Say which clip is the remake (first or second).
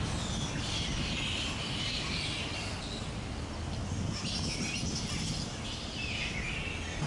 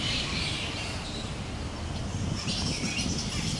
second